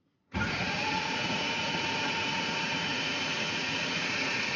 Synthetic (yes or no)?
yes